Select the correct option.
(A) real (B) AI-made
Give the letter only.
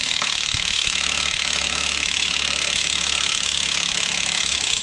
B